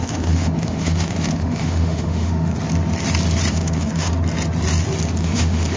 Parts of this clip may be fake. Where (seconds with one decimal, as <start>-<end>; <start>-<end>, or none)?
0.0-2.5; 3.5-4.1; 5.2-5.8